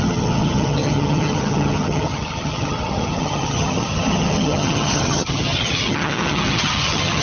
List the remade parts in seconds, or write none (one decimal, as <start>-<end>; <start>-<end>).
0.0-7.2